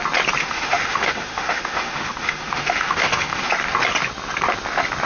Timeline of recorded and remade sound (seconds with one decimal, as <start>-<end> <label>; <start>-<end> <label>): 0.0-0.4 recorded; 0.4-3.5 remade; 3.5-5.1 recorded